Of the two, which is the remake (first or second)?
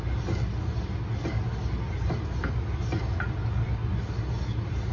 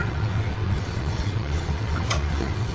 second